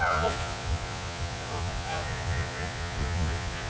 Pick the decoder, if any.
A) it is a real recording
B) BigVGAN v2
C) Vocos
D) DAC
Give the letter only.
C